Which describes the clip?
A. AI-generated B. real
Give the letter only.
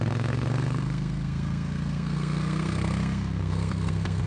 A